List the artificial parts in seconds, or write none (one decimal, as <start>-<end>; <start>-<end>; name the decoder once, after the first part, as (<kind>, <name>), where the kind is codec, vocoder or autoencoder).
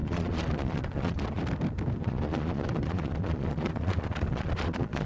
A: 0.0-1.4 (vocoder, Vocos); 2.0-5.1